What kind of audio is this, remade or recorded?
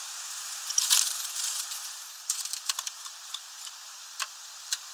remade